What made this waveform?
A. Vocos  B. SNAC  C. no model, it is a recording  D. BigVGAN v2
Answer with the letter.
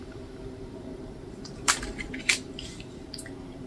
D